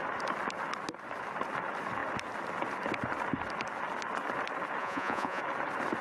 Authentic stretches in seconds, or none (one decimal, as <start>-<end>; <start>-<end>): 0.0-4.8; 5.4-6.0